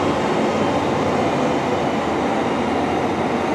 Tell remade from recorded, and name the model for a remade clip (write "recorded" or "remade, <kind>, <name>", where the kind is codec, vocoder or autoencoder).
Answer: recorded